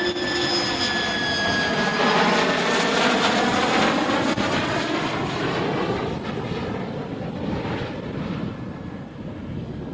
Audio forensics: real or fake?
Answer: real